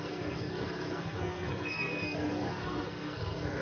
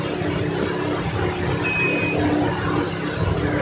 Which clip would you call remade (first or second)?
first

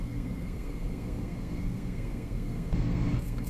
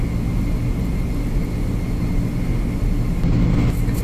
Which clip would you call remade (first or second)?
first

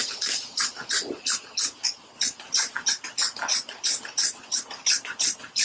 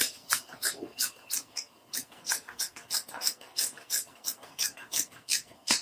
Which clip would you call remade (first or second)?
second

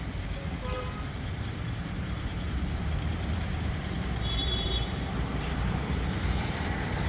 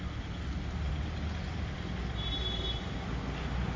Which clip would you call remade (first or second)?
first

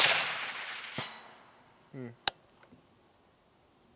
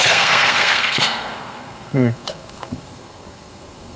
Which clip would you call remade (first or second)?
second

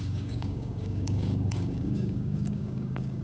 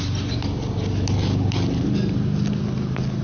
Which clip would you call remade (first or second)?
first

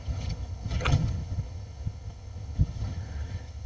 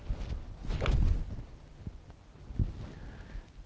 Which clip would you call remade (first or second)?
first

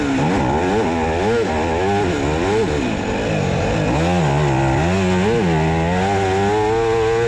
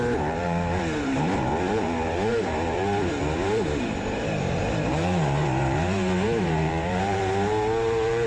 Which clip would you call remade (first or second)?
second